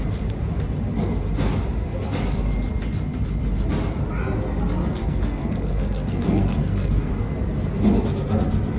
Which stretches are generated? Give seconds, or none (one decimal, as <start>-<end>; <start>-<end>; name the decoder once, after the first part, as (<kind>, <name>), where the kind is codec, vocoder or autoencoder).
4.9-7.1 (codec, SNAC)